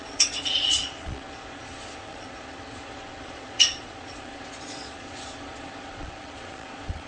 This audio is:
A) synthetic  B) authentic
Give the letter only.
A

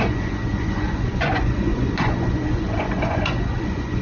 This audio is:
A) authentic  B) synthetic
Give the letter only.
B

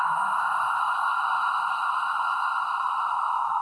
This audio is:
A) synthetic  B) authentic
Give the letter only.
B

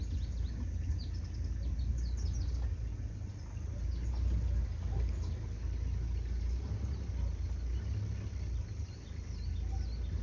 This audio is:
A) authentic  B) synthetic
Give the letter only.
A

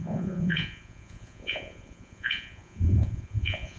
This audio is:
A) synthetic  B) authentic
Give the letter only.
A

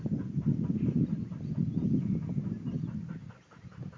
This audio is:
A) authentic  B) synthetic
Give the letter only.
A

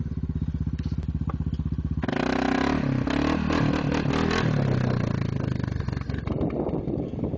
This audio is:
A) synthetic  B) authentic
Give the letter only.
B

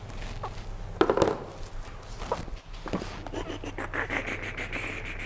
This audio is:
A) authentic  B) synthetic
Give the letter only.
A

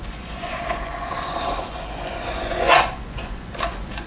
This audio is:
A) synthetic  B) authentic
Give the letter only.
A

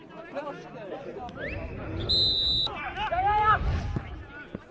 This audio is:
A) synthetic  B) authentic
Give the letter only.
B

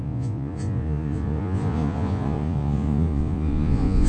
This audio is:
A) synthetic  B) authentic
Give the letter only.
A